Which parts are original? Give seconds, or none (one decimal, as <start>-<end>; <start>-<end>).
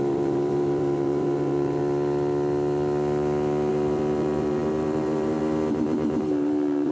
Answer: 1.8-3.7